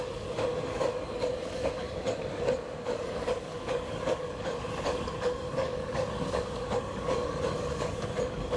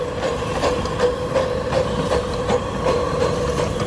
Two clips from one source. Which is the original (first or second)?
second